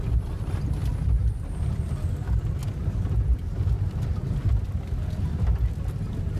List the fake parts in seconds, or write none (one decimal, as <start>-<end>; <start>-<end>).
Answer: none